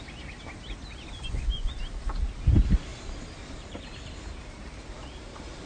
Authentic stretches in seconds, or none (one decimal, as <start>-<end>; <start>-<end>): 0.0-1.1; 1.8-5.7